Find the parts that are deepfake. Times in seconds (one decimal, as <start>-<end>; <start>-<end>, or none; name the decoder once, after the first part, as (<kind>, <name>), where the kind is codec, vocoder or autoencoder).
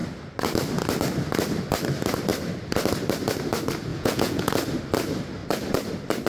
3.9-4.5 (vocoder, Vocos)